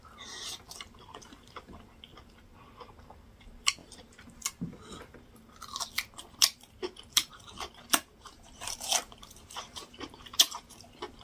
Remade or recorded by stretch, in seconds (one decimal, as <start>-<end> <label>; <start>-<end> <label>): 0.0-3.8 recorded; 3.8-4.4 remade; 4.4-6.2 recorded; 6.2-10.7 remade; 10.7-11.2 recorded